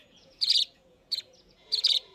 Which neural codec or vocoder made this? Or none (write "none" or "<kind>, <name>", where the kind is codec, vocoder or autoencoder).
vocoder, Vocos